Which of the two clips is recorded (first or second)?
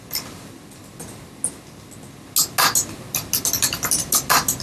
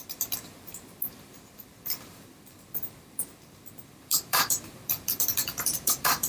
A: first